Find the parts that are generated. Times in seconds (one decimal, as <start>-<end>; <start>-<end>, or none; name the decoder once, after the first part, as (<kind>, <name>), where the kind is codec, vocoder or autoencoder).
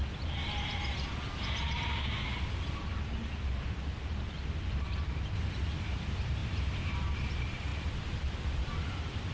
0.0-2.8 (vocoder, BigVGAN v2); 4.9-9.3